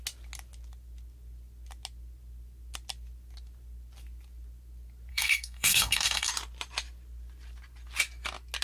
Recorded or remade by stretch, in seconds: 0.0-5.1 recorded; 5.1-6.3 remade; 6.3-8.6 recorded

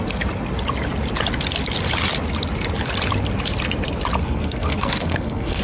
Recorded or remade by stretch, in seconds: 0.0-4.2 recorded; 4.2-5.6 remade